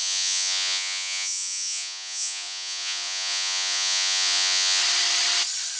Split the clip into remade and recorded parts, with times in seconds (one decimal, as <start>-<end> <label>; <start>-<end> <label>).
0.0-4.8 remade; 4.8-5.8 recorded

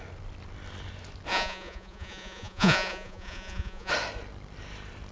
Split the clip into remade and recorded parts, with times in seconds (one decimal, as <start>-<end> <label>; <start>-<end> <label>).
0.0-1.3 recorded; 1.3-3.9 remade; 3.9-5.1 recorded

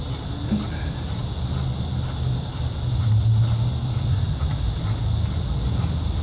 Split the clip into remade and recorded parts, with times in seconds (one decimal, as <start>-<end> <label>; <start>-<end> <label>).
0.0-6.2 recorded

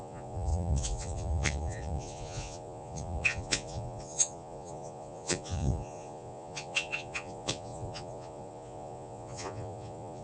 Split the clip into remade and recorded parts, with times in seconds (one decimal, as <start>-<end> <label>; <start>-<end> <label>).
0.0-10.2 remade

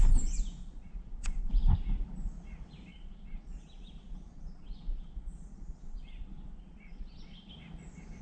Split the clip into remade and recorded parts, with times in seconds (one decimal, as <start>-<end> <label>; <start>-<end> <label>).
0.0-0.6 recorded; 0.6-1.5 remade; 1.5-2.9 recorded; 2.9-7.5 remade; 7.5-8.2 recorded

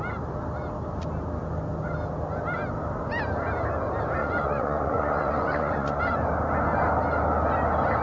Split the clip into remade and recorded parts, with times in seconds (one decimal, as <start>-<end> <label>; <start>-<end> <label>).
0.0-4.2 recorded; 4.2-6.0 remade; 6.0-8.0 recorded